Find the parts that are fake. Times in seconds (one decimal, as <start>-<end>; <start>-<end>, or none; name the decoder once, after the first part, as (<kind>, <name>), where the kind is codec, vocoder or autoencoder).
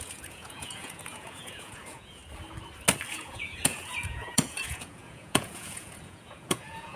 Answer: 0.0-2.2 (vocoder, Vocos); 3.1-7.0